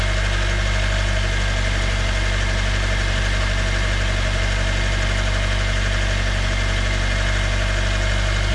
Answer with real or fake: real